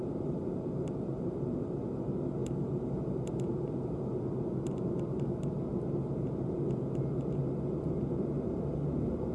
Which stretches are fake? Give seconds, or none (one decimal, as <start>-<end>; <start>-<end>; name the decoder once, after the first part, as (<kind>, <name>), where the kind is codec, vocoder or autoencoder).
none